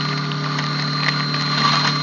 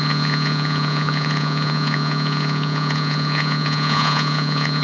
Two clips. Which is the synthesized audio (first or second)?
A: second